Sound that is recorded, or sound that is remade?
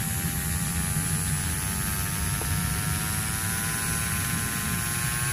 recorded